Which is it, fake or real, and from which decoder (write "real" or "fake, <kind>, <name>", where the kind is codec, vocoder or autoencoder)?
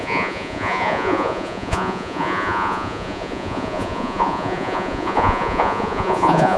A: fake, vocoder, Vocos